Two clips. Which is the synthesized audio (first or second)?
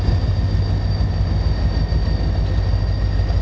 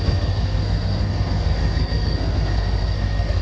second